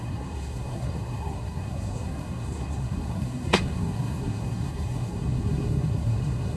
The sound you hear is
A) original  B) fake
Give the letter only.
B